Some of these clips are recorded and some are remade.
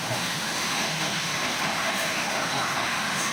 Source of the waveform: remade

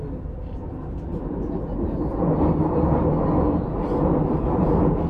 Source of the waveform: recorded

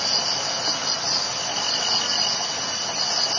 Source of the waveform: recorded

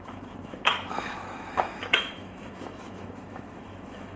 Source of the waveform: remade